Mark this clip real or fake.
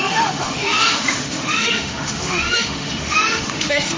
fake